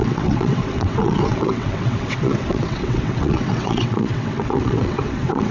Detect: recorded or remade remade